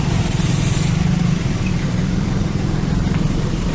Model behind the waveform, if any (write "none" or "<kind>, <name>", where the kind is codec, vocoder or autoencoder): vocoder, BigVGAN v2